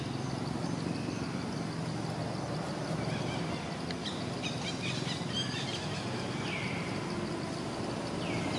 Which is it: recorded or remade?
recorded